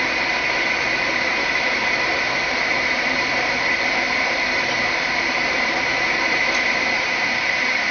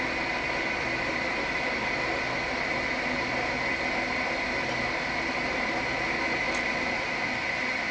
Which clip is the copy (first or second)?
first